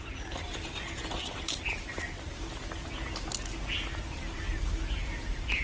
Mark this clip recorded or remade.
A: recorded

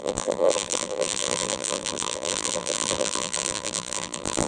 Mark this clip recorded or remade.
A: remade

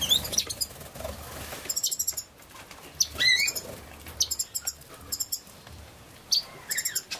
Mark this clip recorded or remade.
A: recorded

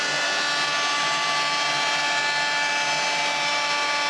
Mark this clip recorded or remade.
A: recorded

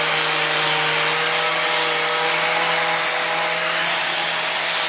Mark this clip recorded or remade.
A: recorded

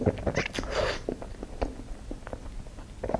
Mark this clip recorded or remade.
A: recorded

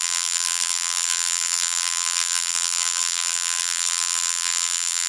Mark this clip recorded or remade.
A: remade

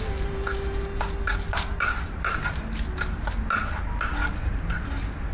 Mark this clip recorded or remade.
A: recorded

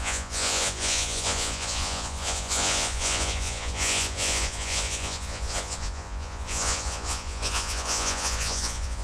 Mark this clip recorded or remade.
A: remade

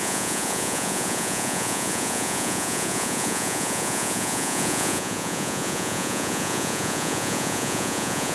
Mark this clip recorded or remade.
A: remade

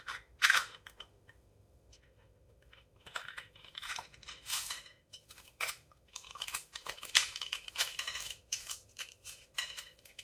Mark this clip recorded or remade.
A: remade